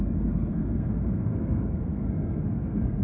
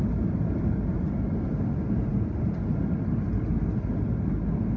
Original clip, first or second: second